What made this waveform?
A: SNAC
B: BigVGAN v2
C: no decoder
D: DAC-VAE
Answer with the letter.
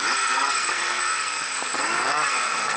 A